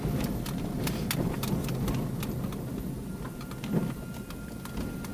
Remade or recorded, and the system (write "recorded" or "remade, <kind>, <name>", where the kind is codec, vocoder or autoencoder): recorded